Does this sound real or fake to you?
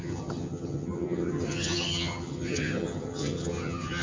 fake